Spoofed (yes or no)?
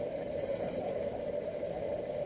no